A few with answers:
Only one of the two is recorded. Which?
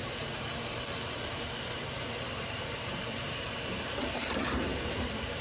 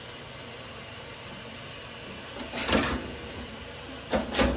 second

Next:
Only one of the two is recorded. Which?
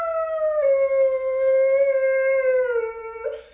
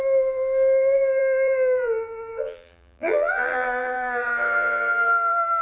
first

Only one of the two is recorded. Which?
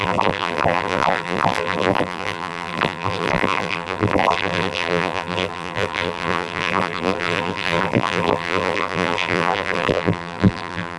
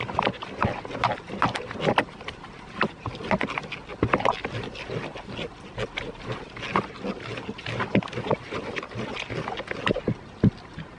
second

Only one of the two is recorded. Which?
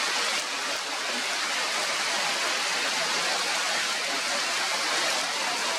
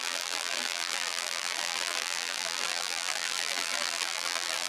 first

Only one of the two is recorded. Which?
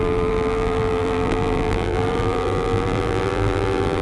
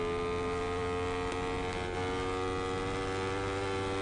second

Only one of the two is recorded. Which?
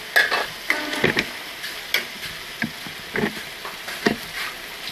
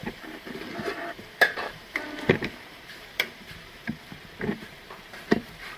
first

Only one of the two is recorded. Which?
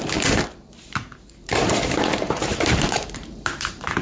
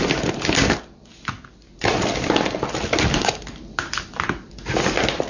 second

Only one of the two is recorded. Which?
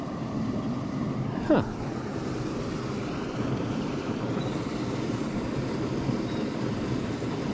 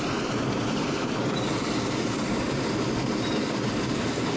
second